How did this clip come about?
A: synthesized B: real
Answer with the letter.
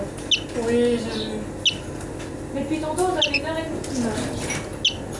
B